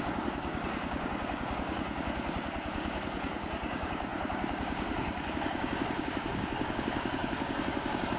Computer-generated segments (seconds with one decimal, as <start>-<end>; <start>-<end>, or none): 0.0-8.2

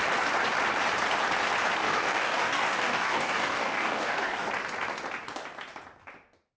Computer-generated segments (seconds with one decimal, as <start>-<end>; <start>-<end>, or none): 1.8-4.5